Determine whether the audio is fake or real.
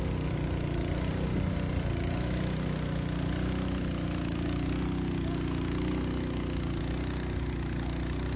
real